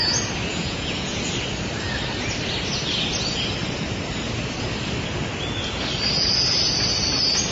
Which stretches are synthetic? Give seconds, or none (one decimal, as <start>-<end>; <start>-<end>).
0.5-1.2